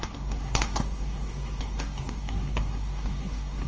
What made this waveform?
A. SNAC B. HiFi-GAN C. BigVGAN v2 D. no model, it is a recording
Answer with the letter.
A